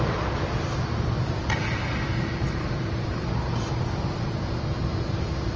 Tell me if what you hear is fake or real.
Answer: real